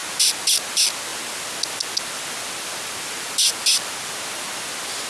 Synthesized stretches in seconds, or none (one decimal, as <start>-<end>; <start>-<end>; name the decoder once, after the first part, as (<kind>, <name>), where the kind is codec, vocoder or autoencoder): none